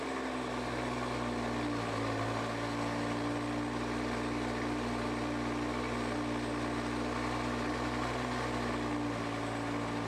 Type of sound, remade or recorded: recorded